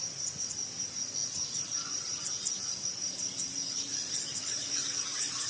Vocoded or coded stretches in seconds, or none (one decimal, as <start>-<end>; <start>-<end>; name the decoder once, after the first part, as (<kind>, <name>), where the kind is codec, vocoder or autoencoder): 0.0-5.5 (vocoder, BigVGAN v2)